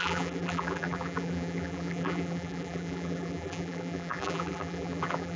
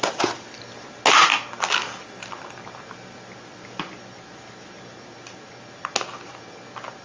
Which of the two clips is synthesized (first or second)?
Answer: first